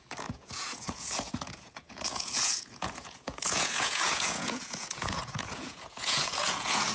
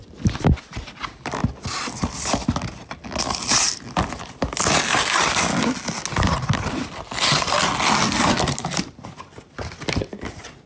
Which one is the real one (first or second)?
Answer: second